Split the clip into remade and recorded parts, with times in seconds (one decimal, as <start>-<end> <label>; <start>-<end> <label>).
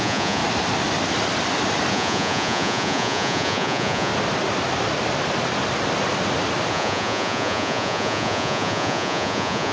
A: 0.0-0.4 remade; 0.4-1.9 recorded; 1.9-4.1 remade; 4.1-6.7 recorded; 6.7-9.7 remade